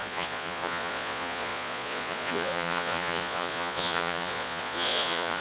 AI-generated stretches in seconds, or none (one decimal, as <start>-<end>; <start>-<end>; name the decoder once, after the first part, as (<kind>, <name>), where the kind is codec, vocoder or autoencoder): 0.0-5.4 (vocoder, Vocos)